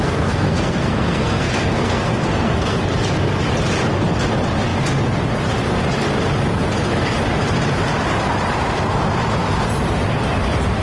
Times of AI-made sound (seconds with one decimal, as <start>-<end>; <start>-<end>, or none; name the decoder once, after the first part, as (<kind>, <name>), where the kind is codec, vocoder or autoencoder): 0.0-2.9 (codec, SNAC)